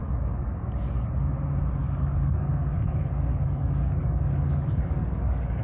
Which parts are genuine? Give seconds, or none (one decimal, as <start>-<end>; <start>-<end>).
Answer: 1.1-1.8